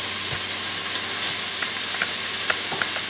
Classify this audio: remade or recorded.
recorded